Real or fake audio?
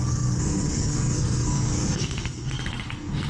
fake